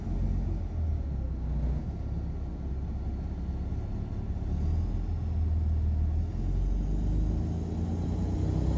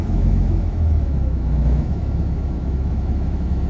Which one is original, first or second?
first